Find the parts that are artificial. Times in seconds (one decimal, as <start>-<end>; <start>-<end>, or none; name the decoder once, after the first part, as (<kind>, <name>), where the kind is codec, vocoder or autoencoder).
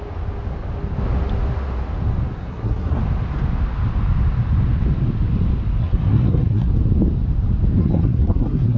2.4-3.0 (codec, SNAC); 5.8-6.7; 7.8-8.8